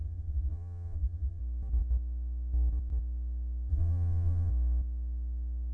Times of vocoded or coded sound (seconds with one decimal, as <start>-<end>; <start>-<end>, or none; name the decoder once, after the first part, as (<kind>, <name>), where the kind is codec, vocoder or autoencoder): 0.0-1.4 (vocoder, Vocos); 3.7-4.5